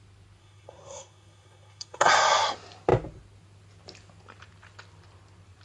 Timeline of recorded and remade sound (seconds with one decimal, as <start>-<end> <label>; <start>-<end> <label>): 0.0-0.4 recorded; 0.4-2.1 remade; 2.1-5.6 recorded

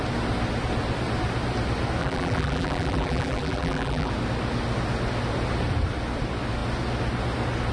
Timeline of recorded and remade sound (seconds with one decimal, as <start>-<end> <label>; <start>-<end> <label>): 0.0-2.0 recorded; 2.0-4.1 remade; 4.1-7.7 recorded

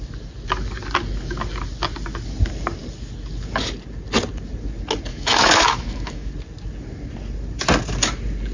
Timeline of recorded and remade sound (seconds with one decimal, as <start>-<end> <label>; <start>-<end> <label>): 0.0-5.1 recorded; 5.1-6.3 remade; 6.3-8.5 recorded